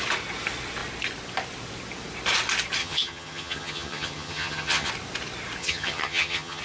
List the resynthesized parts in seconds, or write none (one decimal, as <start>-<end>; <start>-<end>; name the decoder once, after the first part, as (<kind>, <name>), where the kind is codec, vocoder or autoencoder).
2.8-4.9 (vocoder, HiFi-GAN); 5.6-6.6